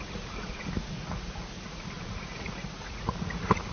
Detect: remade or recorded remade